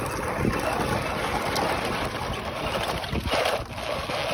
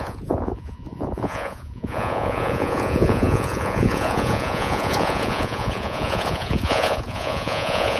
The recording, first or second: first